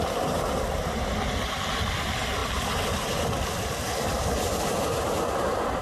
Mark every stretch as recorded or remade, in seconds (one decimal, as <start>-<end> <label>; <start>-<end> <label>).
0.0-5.8 recorded